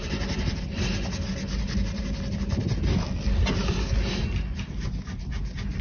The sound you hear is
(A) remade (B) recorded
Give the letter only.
B